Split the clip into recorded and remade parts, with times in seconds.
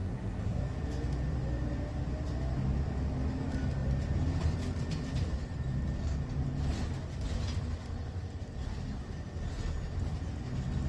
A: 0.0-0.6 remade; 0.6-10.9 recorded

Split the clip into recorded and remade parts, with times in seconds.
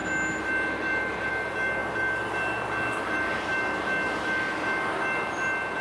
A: 0.0-5.8 recorded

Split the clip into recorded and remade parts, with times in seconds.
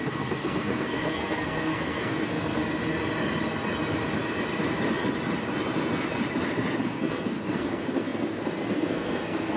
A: 0.0-2.6 remade; 2.6-6.8 recorded; 6.8-9.6 remade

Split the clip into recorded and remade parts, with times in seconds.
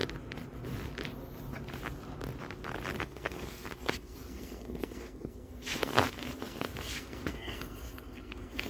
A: 0.0-3.0 recorded; 3.0-8.7 remade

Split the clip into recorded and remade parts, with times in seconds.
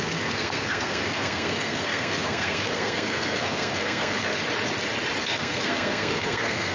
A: 0.0-4.3 remade; 4.3-5.2 recorded; 5.2-6.7 remade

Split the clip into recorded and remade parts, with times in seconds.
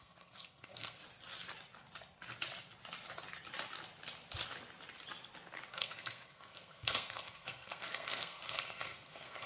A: 0.0-1.0 remade; 1.0-5.7 recorded; 5.7-9.5 remade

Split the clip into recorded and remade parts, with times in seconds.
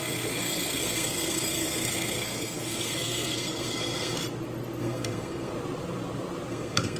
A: 0.0-4.2 remade; 4.2-4.8 recorded; 4.8-5.5 remade; 5.5-6.5 recorded; 6.5-7.0 remade